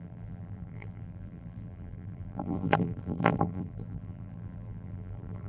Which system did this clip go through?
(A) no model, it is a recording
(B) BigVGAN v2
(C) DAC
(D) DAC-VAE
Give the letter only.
B